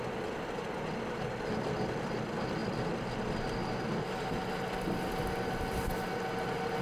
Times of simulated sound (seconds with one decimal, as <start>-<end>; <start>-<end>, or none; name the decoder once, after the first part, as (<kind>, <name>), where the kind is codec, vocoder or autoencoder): none